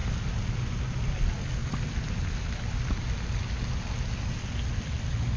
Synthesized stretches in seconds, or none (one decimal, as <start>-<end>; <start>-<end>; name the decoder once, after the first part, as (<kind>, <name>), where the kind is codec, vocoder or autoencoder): none

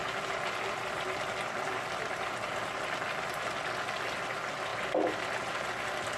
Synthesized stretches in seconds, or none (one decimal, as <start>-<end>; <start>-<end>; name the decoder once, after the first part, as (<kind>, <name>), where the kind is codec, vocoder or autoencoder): none

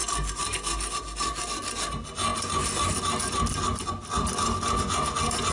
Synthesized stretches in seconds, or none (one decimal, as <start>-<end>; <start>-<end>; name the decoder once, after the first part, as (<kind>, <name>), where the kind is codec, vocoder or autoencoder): none

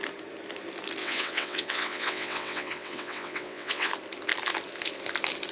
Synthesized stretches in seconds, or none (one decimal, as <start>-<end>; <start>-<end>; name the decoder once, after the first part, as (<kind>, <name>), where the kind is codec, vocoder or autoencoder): 1.0-3.9 (vocoder, WaveNeXt)

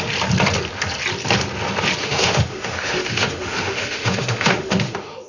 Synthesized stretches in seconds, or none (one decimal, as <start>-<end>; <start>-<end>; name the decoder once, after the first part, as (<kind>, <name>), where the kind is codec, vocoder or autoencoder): 2.0-5.3 (autoencoder, DAC-VAE)

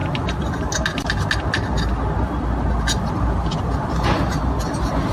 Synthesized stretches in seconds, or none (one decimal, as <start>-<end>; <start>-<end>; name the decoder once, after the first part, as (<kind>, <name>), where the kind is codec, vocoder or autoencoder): none

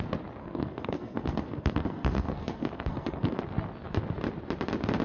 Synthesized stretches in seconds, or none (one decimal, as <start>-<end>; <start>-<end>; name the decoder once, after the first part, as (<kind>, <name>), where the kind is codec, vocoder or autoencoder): 0.4-3.4 (codec, SNAC)

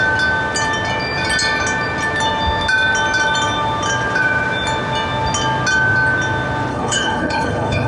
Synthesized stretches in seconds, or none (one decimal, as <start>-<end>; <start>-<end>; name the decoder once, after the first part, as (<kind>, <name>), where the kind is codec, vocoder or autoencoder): 6.7-7.9 (codec, HILCodec)